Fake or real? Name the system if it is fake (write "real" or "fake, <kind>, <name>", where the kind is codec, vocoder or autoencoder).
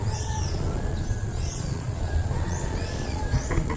fake, vocoder, Vocos